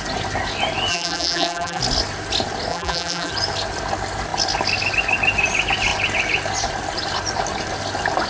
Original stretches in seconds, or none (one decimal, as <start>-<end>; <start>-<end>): 0.0-0.9; 1.8-2.7; 3.3-8.3